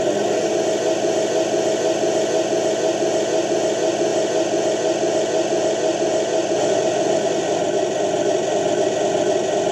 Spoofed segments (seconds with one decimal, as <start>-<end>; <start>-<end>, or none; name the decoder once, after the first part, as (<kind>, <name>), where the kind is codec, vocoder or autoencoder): 4.1-8.9 (vocoder, BigVGAN v2)